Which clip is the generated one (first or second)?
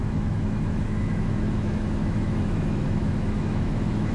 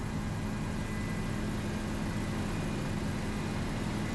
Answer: first